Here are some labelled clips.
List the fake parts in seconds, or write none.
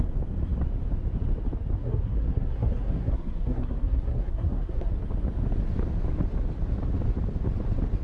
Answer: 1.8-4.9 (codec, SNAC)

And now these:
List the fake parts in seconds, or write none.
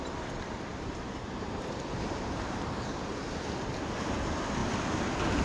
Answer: 0.7-3.7 (vocoder, BigVGAN v2)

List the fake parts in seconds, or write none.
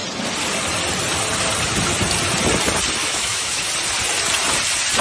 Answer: 3.0-3.6 (autoencoder, DAC-VAE)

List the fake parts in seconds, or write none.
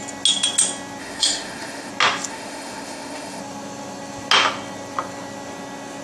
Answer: 1.0-1.9 (autoencoder, DAC-VAE); 2.3-3.4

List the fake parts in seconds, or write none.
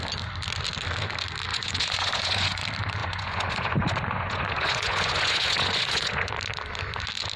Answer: 1.5-2.6 (vocoder, Vocos); 3.0-6.3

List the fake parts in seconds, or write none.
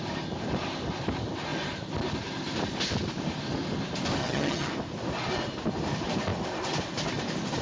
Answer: 4.2-4.7 (vocoder, HiFi-GAN)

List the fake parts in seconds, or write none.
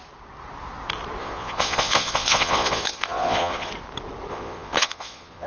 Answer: 1.2-3.7 (vocoder, Vocos); 4.3-5.5